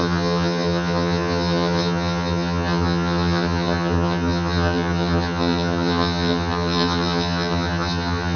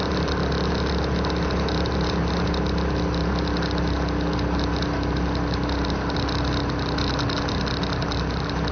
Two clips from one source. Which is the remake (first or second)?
first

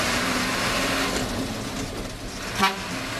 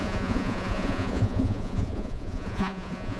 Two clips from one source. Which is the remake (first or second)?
second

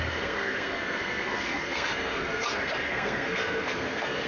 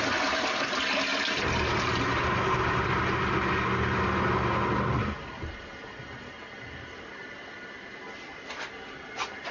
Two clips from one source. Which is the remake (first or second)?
first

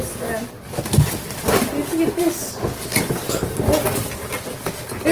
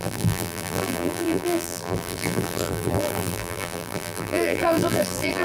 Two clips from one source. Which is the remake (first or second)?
second